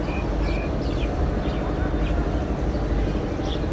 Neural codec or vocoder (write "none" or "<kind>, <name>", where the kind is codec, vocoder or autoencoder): none